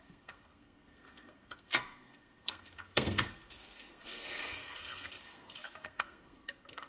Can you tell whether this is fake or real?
fake